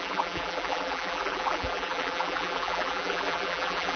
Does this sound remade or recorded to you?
remade